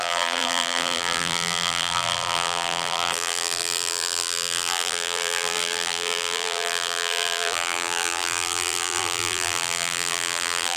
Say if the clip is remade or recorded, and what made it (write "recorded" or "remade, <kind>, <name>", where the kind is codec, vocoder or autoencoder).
remade, vocoder, BigVGAN v2